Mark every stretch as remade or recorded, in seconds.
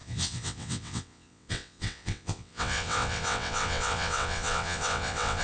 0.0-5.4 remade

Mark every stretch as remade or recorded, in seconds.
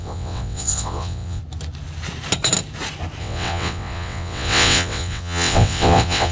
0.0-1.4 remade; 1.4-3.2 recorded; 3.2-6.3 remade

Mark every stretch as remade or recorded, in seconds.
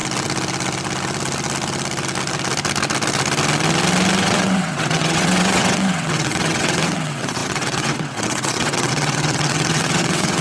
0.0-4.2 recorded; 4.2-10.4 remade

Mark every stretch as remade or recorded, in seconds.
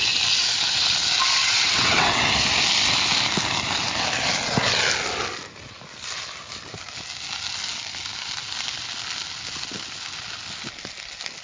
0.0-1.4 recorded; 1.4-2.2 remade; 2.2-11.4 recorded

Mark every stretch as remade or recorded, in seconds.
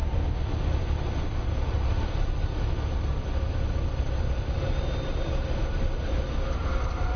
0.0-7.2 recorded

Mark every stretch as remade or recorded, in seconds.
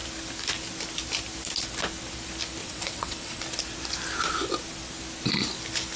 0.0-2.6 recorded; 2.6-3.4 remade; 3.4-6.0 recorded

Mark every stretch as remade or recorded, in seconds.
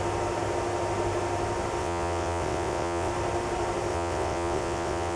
0.0-1.8 recorded; 1.8-3.1 remade; 3.1-3.9 recorded; 3.9-5.2 remade